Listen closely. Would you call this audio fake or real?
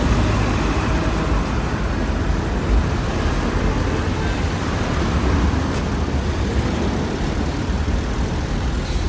fake